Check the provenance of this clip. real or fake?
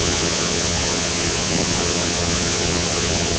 fake